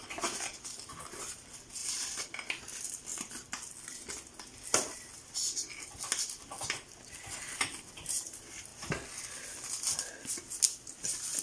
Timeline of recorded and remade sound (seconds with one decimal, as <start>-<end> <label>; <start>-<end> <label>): 0.0-11.4 recorded